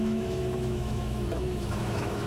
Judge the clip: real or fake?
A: fake